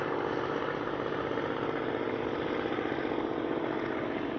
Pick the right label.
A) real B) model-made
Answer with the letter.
A